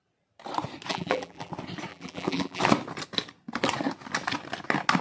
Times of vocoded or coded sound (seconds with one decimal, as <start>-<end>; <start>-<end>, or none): 0.9-1.5; 1.9-2.6